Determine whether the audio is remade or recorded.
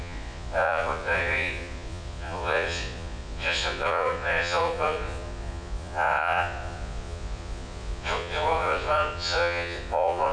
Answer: remade